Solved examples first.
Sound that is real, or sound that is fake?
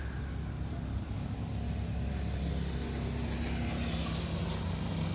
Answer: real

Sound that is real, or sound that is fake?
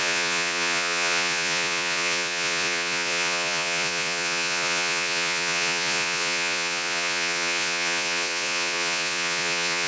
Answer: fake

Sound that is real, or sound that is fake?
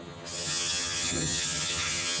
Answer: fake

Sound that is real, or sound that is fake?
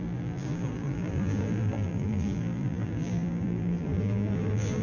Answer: fake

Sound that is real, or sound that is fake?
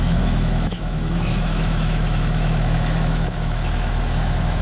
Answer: fake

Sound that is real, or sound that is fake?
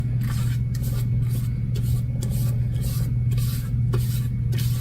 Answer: real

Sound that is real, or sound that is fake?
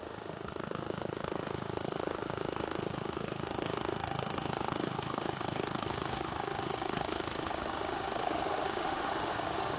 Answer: fake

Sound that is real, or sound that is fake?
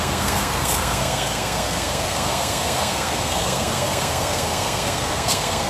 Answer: fake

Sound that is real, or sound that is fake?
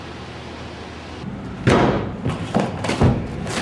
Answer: real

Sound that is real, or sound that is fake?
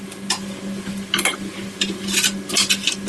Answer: real